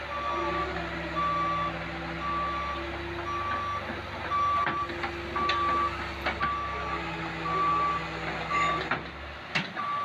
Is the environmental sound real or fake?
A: real